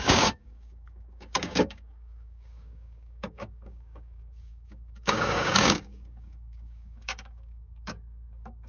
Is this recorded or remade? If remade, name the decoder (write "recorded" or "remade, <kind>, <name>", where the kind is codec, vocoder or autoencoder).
remade, codec, DAC